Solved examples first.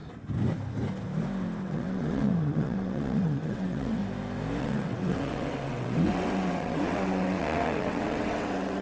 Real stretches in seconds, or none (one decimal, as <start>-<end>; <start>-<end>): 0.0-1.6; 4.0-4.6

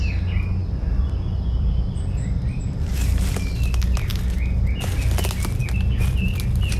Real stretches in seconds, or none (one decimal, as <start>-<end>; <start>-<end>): 0.0-0.6; 3.3-6.8

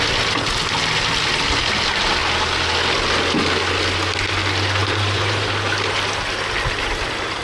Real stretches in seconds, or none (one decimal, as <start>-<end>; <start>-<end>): 0.0-4.8; 6.2-7.4

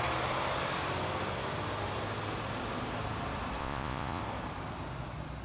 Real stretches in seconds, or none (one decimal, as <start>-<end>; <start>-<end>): 0.0-3.6; 4.2-5.4